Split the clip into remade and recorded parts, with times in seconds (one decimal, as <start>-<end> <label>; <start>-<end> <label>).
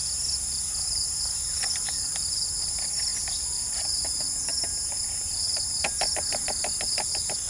0.0-7.5 recorded